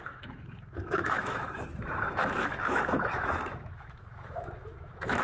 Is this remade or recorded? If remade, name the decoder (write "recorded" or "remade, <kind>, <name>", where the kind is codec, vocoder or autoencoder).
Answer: remade, autoencoder, DAC-VAE